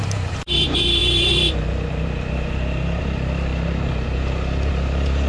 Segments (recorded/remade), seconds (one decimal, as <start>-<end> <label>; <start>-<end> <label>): 0.0-5.3 remade